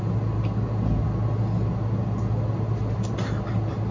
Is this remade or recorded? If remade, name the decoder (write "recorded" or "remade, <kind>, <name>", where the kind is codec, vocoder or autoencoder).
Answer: recorded